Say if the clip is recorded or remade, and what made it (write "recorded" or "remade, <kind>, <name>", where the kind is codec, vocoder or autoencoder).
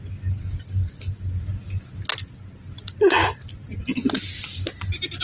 recorded